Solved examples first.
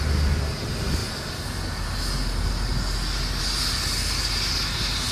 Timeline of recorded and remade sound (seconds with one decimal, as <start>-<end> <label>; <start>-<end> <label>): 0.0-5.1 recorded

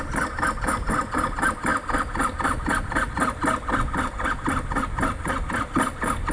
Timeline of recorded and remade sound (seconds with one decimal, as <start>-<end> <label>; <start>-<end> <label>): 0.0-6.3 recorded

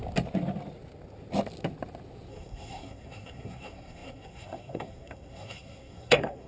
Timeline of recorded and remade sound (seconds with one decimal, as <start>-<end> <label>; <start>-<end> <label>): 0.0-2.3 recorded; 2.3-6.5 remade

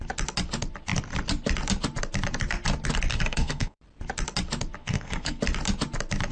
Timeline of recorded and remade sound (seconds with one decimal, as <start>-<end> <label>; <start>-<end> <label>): 0.0-3.1 recorded; 3.1-3.8 remade; 3.8-4.8 recorded; 4.8-5.4 remade; 5.4-6.3 recorded